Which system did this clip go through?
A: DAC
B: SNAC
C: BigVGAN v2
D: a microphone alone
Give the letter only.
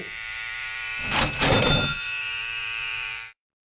C